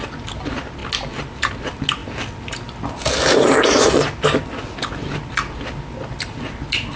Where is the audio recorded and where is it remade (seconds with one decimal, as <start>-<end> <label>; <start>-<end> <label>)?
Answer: 0.0-7.0 recorded

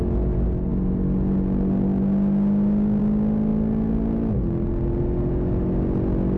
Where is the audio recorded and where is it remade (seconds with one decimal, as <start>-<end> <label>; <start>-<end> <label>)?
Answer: 0.0-6.4 recorded

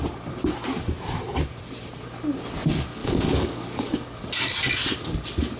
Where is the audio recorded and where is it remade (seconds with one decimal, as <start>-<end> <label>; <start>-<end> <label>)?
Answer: 0.0-3.0 recorded; 3.0-4.2 remade; 4.2-5.6 recorded

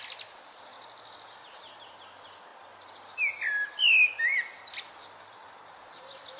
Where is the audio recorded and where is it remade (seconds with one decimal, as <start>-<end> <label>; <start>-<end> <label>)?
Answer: 0.0-6.4 recorded

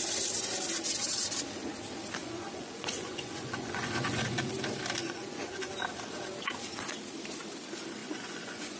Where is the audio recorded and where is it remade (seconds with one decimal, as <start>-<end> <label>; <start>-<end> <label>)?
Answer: 0.0-2.2 recorded; 2.2-4.5 remade; 4.5-5.0 recorded; 5.0-5.7 remade; 5.7-8.0 recorded; 8.0-8.8 remade